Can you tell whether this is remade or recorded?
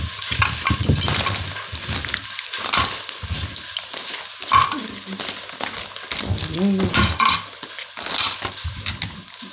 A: recorded